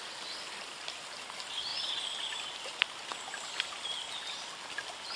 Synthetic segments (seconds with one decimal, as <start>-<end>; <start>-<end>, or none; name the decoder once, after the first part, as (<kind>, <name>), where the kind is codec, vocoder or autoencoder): none